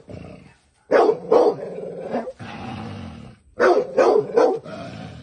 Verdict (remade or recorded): recorded